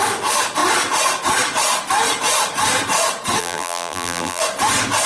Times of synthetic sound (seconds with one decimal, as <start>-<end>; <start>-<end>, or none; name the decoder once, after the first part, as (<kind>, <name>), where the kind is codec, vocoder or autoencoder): 3.4-4.4 (vocoder, BigVGAN v2)

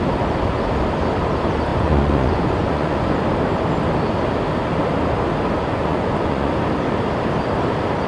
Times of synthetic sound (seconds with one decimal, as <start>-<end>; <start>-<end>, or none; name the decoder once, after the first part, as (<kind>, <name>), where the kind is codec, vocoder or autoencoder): 1.7-3.1 (vocoder, Vocos); 5.6-6.5

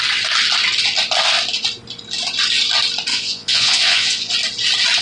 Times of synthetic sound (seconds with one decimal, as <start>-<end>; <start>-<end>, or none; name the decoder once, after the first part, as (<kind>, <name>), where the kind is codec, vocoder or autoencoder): 3.1-4.3 (vocoder, Vocos)

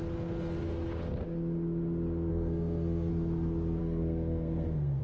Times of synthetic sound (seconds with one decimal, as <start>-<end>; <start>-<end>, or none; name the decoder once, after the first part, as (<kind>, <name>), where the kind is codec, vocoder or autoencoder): 2.3-3.1 (codec, SNAC); 3.8-5.0